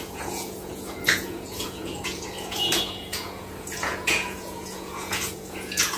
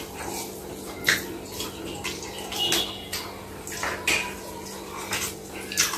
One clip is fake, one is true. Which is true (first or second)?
second